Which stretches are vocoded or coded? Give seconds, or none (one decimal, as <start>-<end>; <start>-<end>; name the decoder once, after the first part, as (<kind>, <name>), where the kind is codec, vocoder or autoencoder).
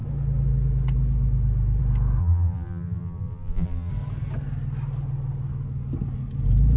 2.2-3.9 (vocoder, BigVGAN v2)